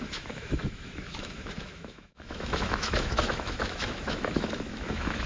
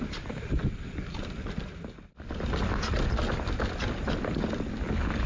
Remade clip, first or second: first